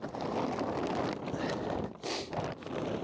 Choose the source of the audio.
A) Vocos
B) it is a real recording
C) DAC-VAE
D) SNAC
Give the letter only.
B